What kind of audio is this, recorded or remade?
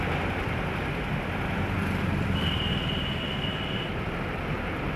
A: recorded